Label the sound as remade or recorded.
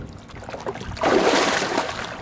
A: recorded